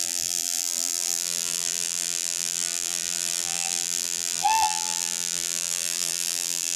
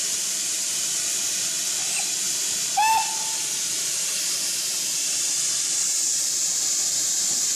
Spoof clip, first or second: first